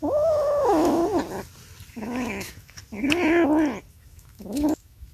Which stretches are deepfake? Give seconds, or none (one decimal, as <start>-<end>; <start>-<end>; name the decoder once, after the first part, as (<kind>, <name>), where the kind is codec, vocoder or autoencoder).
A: 0.0-1.0 (autoencoder, DAC-VAE); 1.9-2.8; 3.9-5.1